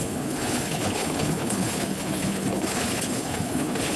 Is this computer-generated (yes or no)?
yes